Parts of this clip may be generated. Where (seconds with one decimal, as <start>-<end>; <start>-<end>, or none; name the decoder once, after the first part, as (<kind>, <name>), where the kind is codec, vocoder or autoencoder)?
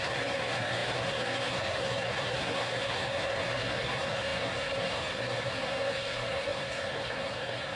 0.0-7.8 (codec, SNAC)